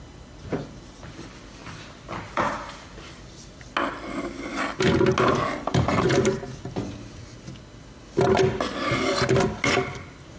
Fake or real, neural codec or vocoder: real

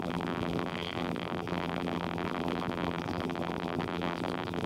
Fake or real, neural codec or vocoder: fake, vocoder, BigVGAN v2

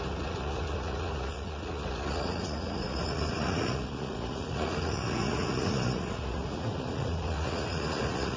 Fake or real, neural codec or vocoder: fake, vocoder, Vocos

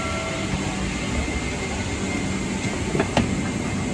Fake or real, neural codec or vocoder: real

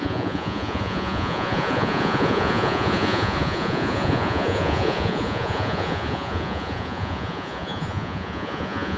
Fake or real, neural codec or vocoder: fake, vocoder, Vocos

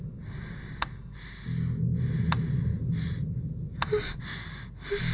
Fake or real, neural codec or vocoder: real